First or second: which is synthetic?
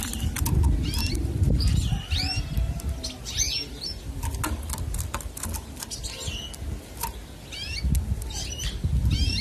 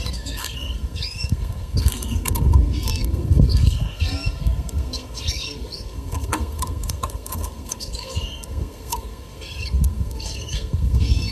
second